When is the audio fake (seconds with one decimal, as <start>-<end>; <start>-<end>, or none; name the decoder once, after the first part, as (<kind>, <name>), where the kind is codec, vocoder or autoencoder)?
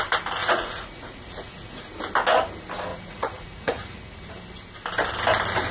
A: 0.4-1.9 (vocoder, Vocos); 2.9-4.3